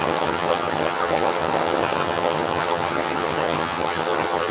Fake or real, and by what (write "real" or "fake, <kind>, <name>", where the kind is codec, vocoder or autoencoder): fake, vocoder, HiFi-GAN